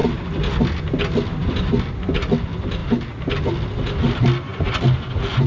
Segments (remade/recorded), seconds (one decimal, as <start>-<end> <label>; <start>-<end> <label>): 0.0-5.5 recorded